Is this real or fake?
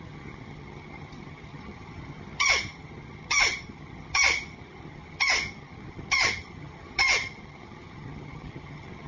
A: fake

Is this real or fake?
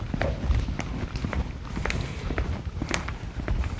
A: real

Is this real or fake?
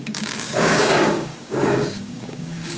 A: fake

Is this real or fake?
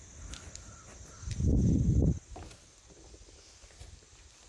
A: real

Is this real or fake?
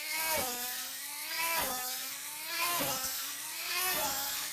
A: fake